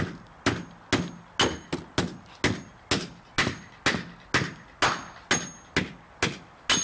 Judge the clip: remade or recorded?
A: recorded